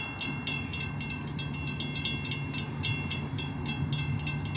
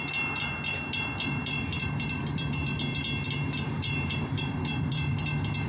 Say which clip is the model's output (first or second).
second